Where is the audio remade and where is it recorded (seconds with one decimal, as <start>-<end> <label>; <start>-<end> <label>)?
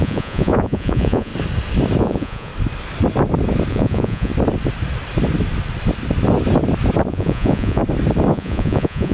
0.0-1.3 remade; 1.3-2.0 recorded; 2.0-2.5 remade; 2.5-3.7 recorded; 3.7-4.3 remade; 4.3-7.1 recorded; 7.1-7.8 remade; 7.8-8.3 recorded; 8.3-9.1 remade